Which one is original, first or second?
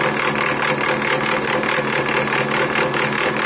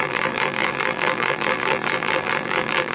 first